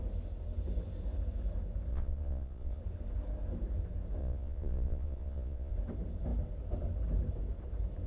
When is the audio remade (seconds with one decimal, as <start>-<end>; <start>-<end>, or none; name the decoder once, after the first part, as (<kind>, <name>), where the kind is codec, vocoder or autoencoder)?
1.9-2.8 (vocoder, Vocos); 4.2-5.7